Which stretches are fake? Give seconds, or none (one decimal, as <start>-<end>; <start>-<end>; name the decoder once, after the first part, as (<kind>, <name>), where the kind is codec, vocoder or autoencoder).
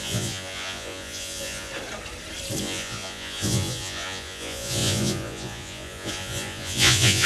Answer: 0.0-1.7 (vocoder, Vocos); 2.6-7.3